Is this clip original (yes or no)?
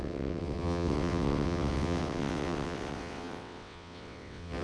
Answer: no